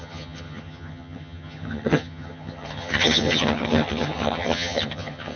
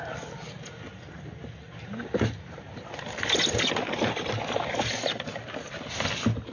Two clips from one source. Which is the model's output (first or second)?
first